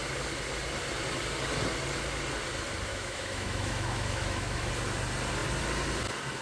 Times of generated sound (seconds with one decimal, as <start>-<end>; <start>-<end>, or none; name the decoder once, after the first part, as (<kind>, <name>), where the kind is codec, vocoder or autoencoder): 2.9-4.7 (autoencoder, DAC-VAE)